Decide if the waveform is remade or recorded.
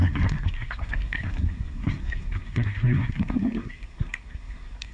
remade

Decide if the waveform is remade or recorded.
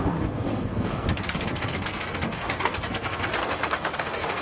remade